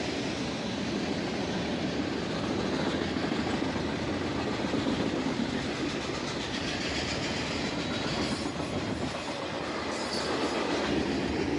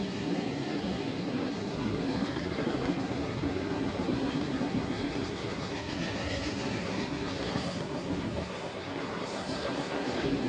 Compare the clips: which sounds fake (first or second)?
second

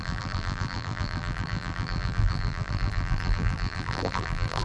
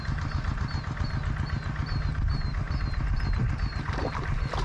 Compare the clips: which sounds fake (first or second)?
first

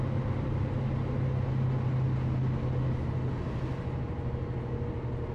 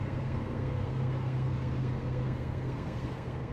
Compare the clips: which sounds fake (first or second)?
second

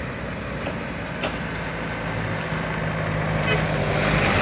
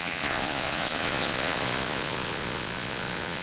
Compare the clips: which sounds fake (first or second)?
second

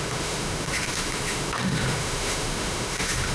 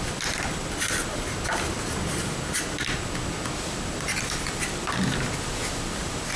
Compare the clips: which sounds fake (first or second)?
first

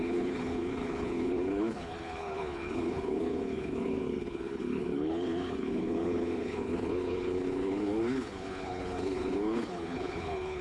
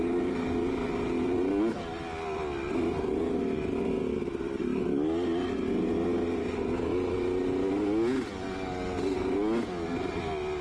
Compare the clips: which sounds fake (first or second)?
first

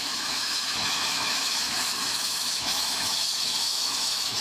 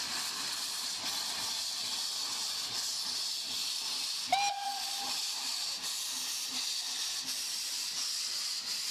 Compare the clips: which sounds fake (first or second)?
first